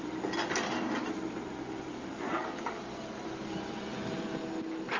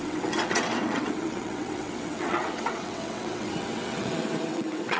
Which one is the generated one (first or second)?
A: second